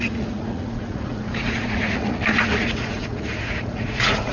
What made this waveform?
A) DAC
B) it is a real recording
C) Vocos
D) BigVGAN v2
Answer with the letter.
C